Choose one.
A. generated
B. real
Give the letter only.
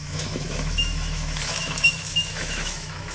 A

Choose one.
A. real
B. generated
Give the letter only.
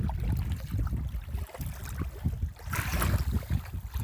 A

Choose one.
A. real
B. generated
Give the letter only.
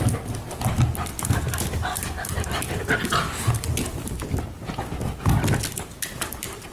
A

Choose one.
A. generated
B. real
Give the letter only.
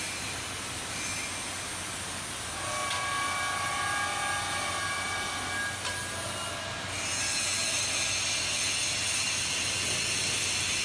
B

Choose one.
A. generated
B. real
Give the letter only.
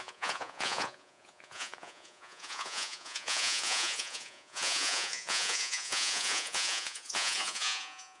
A